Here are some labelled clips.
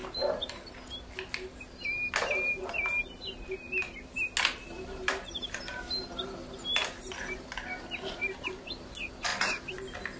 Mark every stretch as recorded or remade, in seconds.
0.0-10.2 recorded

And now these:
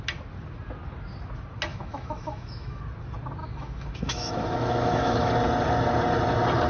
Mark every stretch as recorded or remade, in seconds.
0.0-1.7 recorded; 1.7-2.8 remade; 2.8-3.4 recorded; 3.4-5.3 remade; 5.3-6.7 recorded

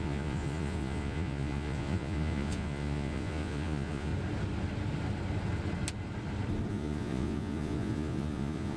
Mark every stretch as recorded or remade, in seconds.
0.0-4.1 remade; 4.1-6.7 recorded; 6.7-8.8 remade

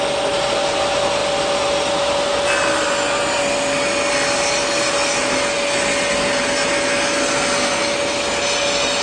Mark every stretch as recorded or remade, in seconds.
0.0-9.0 recorded

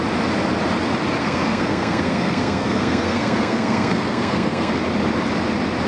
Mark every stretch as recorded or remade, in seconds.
0.0-1.2 recorded; 1.2-4.7 remade; 4.7-5.9 recorded

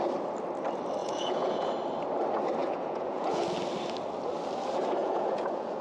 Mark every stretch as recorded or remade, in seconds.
0.0-1.0 recorded; 1.0-1.7 remade; 1.7-2.6 recorded; 2.6-3.4 remade; 3.4-5.0 recorded; 5.0-5.8 remade

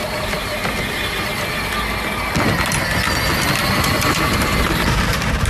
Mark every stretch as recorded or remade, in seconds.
0.0-0.6 remade; 0.6-3.9 recorded; 3.9-5.5 remade

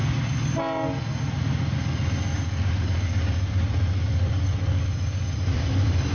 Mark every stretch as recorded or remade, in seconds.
0.0-2.8 recorded; 2.8-6.1 remade